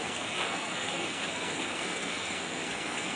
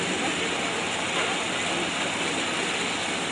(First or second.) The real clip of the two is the second